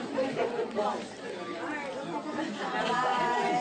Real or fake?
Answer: real